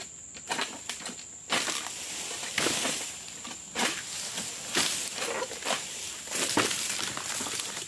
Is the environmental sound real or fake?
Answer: fake